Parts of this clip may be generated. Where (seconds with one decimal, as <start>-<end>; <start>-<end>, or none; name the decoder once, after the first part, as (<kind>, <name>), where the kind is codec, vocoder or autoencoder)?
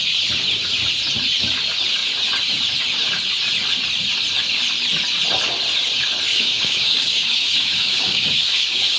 6.3-9.0 (codec, DAC)